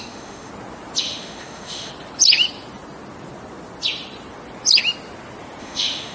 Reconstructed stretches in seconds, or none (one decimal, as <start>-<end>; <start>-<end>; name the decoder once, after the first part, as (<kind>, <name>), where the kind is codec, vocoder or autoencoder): 0.0-0.5 (autoencoder, DAC-VAE); 1.0-1.9; 5.6-6.1